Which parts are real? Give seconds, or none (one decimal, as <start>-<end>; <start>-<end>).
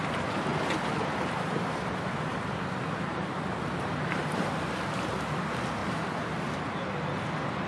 0.0-0.5; 4.5-7.7